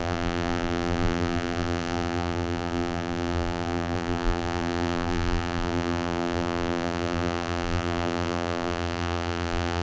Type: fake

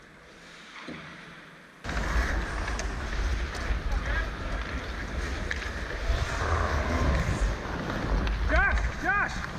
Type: real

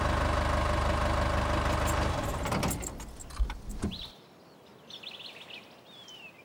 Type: real